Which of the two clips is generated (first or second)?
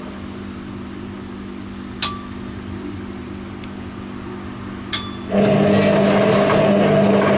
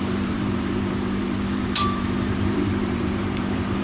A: second